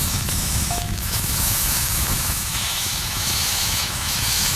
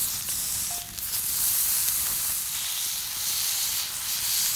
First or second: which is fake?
first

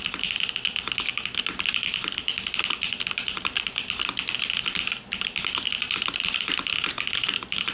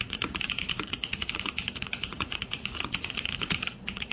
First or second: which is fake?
second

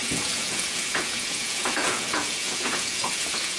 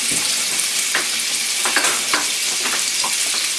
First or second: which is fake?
first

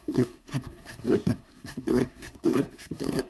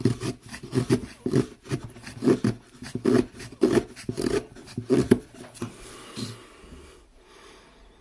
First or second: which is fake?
first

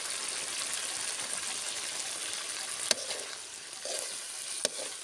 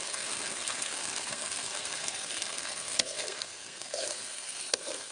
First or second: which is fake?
second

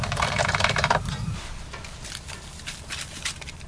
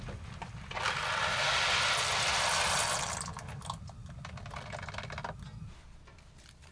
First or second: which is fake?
first